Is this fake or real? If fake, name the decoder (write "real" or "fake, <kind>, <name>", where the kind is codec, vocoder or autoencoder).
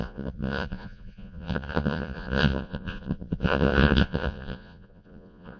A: fake, vocoder, Vocos